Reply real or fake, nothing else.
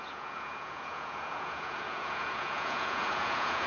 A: fake